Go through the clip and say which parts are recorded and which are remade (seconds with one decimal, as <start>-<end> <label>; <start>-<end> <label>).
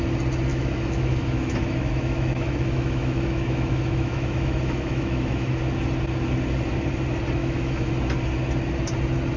0.0-0.5 recorded; 0.5-5.6 remade; 5.6-7.4 recorded; 7.4-7.9 remade; 7.9-9.4 recorded